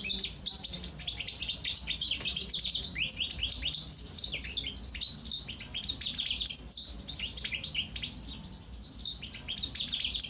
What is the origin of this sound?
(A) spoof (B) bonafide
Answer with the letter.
B